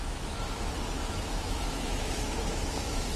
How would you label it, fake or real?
fake